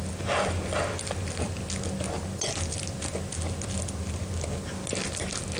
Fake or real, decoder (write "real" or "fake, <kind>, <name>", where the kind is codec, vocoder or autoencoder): real